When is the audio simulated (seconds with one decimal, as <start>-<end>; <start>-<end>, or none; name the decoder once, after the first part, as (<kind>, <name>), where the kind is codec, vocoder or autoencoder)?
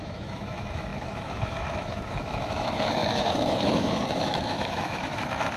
0.0-5.6 (autoencoder, DAC-VAE)